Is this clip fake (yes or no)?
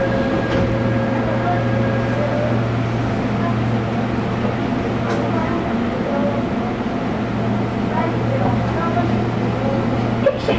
no